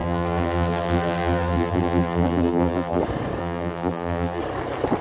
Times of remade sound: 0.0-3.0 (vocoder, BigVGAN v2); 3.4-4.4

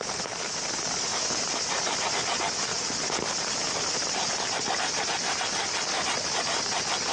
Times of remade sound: 1.1-2.1 (vocoder, BigVGAN v2); 2.7-7.1

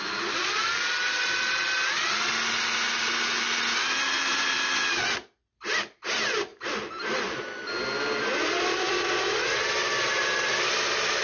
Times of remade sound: 6.5-7.4 (vocoder, BigVGAN v2)

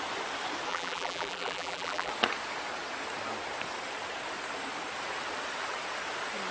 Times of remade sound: 0.7-2.1 (vocoder, BigVGAN v2)

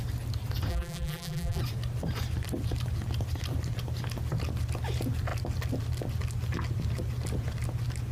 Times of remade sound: 0.7-1.6 (vocoder, BigVGAN v2)

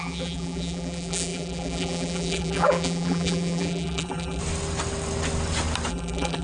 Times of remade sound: 0.0-4.4 (vocoder, BigVGAN v2); 5.9-6.4

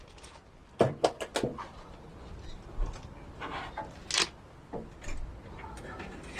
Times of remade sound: none